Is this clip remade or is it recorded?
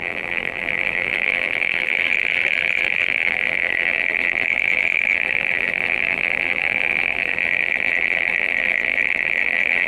remade